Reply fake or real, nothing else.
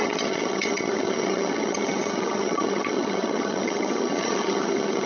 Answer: fake